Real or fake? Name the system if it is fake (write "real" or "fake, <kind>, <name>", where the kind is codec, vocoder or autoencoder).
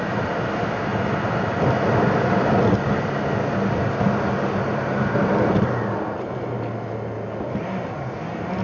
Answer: real